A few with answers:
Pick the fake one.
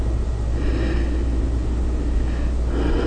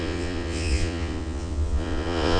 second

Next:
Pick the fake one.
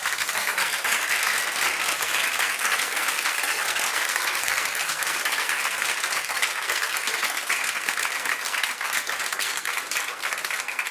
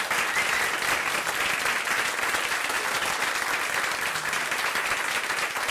first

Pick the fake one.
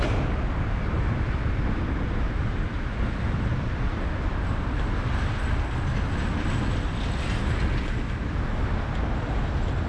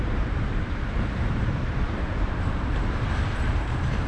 second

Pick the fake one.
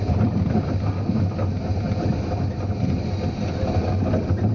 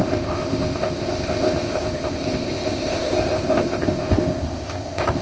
second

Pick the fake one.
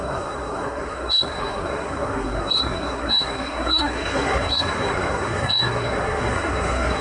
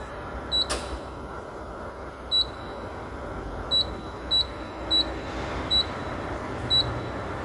first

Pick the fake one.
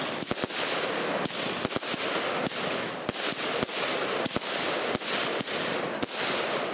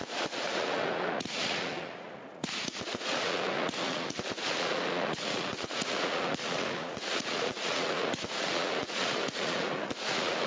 second